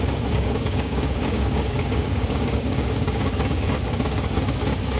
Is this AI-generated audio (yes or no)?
yes